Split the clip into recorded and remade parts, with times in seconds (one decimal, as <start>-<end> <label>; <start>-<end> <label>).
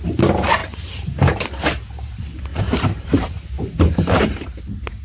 0.0-2.5 recorded; 2.5-4.2 remade; 4.2-5.0 recorded